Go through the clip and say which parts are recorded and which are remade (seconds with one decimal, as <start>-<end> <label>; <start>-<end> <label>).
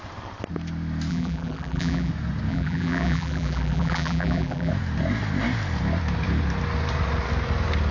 0.0-1.1 recorded; 1.1-2.1 remade; 2.1-2.5 recorded; 2.5-4.7 remade; 4.7-7.9 recorded